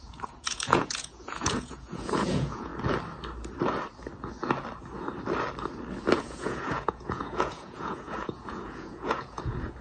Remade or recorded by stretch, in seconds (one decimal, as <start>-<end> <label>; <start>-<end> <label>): 0.0-2.7 remade; 2.7-6.2 recorded; 6.2-9.8 remade